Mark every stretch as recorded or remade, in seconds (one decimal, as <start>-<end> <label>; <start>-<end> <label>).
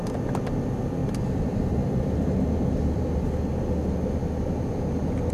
0.0-1.0 recorded; 1.0-3.6 remade; 3.6-4.2 recorded; 4.2-4.7 remade; 4.7-5.3 recorded